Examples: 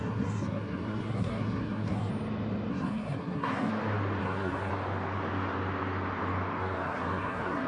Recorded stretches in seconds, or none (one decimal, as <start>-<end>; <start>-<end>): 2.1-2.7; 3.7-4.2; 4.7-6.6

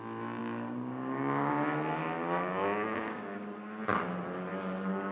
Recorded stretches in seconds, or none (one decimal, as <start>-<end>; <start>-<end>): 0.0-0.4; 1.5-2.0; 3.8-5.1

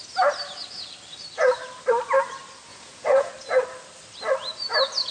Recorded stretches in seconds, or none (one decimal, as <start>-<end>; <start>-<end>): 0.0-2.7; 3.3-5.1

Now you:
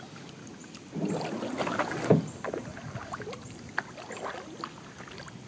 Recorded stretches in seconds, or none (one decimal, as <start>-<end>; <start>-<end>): 0.0-5.5

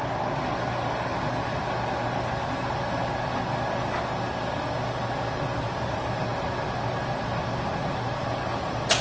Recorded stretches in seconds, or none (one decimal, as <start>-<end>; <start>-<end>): 0.0-9.0

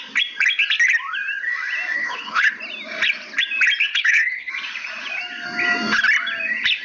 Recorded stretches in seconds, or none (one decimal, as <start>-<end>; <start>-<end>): 0.0-2.0; 2.5-3.9; 4.5-6.8

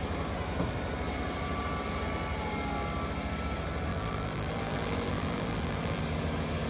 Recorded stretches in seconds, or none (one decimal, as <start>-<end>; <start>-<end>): 0.0-3.9; 6.0-6.7

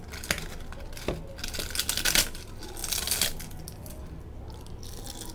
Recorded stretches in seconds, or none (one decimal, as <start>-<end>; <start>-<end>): 0.0-5.3